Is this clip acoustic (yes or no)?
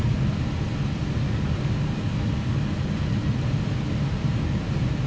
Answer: yes